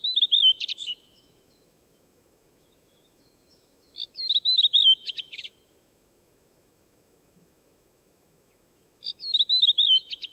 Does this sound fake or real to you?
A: fake